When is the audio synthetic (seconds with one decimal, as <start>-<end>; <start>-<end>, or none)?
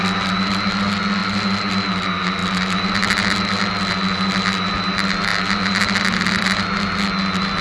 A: none